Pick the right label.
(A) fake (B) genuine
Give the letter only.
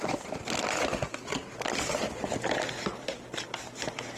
B